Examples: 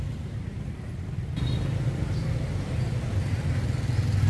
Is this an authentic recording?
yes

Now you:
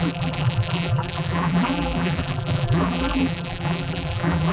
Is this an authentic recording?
no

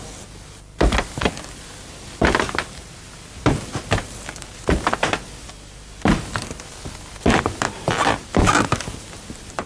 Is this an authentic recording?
yes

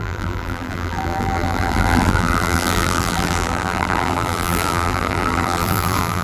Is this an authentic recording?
no